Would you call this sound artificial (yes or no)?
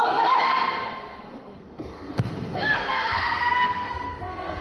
yes